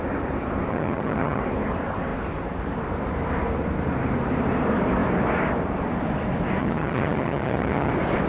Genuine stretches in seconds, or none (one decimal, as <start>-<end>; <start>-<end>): 0.0-0.7; 1.4-6.6; 7.9-8.3

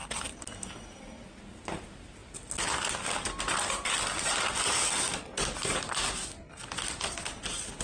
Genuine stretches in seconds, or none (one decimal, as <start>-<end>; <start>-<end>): 0.0-7.8

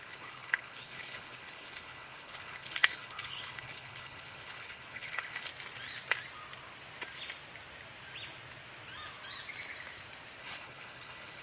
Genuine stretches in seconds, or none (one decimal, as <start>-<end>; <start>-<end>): 5.5-10.4